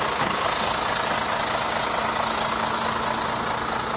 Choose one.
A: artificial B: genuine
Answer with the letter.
B